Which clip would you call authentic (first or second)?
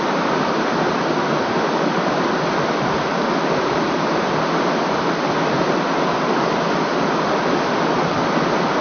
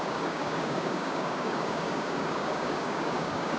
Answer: first